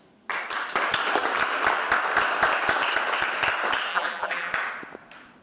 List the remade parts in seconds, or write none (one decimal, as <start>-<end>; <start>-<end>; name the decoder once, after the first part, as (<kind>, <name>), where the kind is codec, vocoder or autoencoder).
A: 3.9-4.5 (vocoder, BigVGAN v2)